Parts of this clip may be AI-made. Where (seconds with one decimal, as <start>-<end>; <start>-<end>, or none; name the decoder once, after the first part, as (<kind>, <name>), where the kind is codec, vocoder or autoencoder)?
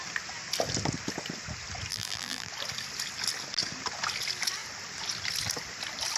1.9-2.5 (vocoder, BigVGAN v2)